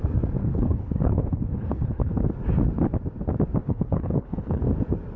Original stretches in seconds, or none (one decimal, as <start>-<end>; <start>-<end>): 0.0-0.4; 2.1-3.6; 4.6-5.2